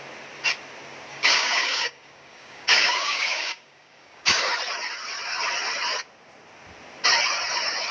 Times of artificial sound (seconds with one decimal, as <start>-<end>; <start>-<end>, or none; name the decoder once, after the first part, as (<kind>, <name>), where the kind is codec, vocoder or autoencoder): 1.1-4.5 (codec, DAC)